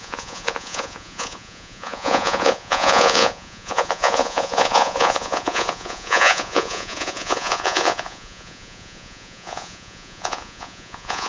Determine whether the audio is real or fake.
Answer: fake